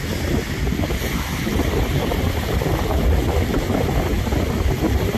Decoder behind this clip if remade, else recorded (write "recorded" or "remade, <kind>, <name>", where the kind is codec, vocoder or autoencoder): recorded